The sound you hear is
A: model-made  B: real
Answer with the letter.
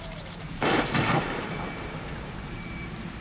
A